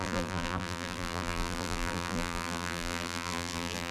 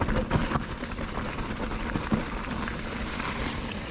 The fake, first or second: first